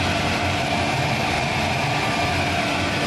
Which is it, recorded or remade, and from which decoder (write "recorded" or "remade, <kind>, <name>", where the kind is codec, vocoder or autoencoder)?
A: recorded